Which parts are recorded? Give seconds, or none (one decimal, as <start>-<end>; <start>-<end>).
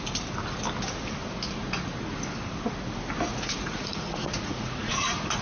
0.0-3.3